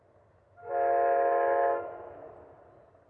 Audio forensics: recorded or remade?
recorded